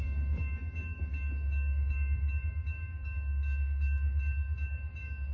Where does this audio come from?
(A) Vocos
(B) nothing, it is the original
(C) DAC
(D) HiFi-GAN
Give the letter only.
C